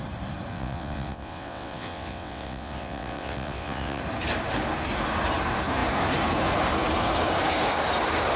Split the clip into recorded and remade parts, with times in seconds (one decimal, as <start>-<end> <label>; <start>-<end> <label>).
0.0-0.5 recorded; 0.5-4.0 remade; 4.0-8.4 recorded